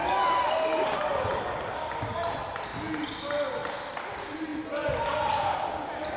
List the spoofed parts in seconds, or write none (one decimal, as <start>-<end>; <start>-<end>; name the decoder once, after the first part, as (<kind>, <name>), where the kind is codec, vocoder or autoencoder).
none